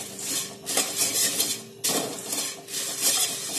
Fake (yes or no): no